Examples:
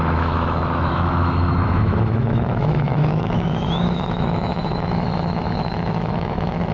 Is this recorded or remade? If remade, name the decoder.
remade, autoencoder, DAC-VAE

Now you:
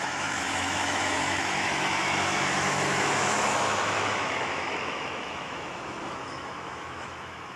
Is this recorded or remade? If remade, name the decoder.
remade, autoencoder, DAC-VAE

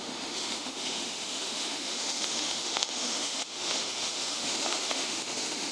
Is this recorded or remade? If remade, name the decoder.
remade, autoencoder, DAC-VAE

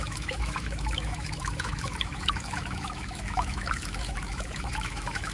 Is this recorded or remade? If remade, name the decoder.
remade, autoencoder, DAC-VAE